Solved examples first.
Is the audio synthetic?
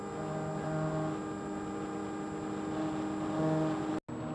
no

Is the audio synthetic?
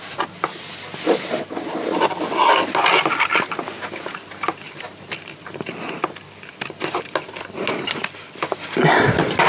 no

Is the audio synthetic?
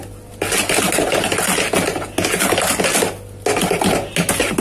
no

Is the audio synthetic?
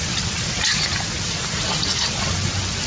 no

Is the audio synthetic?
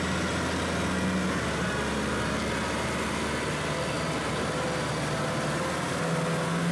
no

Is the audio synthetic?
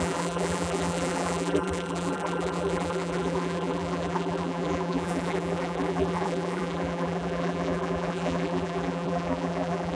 yes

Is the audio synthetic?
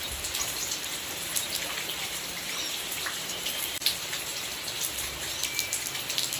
yes